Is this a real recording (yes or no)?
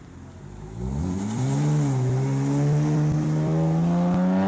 yes